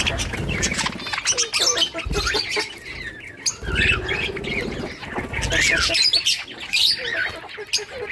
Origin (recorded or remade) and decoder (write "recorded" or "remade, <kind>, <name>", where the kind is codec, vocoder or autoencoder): recorded